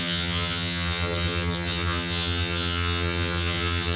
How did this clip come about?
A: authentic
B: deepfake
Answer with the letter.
B